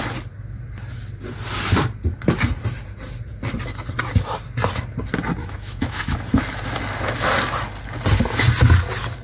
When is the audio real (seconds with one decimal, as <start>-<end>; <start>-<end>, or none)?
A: 0.0-5.4; 6.0-9.2